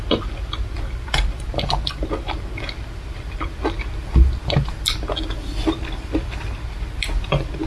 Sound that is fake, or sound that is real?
real